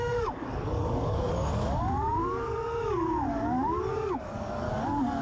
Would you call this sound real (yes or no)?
no